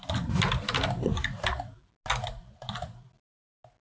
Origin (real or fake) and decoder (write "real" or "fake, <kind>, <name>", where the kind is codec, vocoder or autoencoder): real